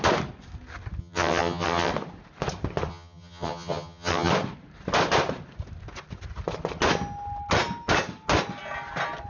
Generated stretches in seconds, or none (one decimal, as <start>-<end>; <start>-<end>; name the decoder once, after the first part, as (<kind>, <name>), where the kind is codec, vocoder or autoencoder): 1.0-1.9 (vocoder, HiFi-GAN); 2.9-4.3